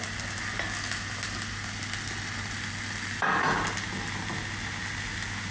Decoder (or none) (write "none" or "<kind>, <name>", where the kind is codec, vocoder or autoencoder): none